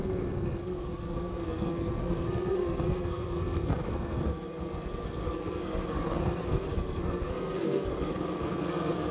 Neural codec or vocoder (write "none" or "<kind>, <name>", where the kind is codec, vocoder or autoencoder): codec, SNAC